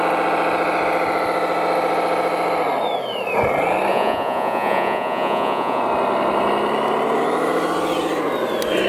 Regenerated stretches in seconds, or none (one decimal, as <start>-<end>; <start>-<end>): 3.9-5.8